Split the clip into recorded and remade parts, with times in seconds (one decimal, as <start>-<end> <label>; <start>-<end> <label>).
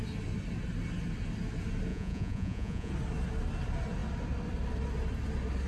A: 0.0-1.9 recorded; 1.9-2.9 remade; 2.9-5.7 recorded